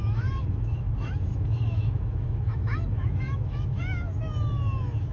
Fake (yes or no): yes